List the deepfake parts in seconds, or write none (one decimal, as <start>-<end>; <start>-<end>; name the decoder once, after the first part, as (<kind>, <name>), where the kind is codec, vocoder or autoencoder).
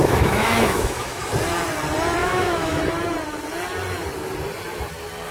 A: 0.0-1.2 (autoencoder, DAC-VAE); 2.2-2.8